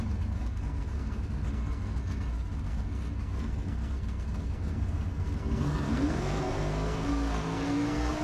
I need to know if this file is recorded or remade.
remade